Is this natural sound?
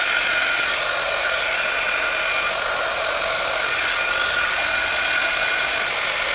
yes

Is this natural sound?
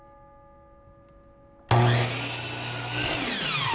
yes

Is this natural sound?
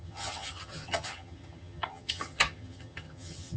no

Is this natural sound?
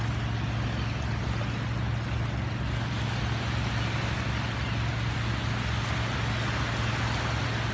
yes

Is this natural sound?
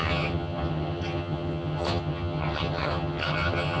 no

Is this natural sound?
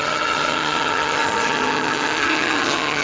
no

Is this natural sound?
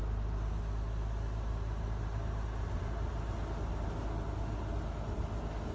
yes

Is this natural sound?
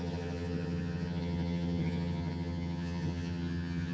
no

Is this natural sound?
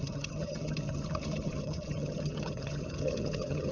no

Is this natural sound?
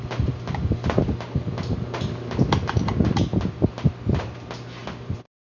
yes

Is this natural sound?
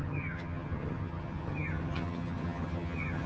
no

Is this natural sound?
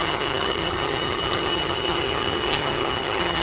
no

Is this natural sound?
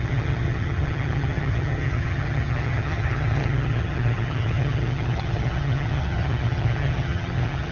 no